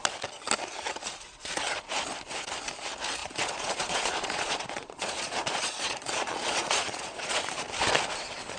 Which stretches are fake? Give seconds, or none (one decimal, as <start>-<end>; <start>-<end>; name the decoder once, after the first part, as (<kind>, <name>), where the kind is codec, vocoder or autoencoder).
3.2-7.6 (vocoder, Vocos)